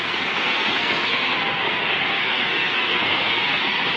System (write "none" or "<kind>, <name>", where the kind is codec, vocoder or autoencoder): codec, SNAC